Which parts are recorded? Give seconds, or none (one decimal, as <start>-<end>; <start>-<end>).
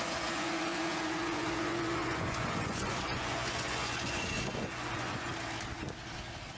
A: 5.3-6.6